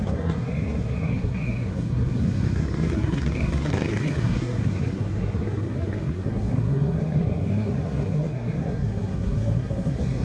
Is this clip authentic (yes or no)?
no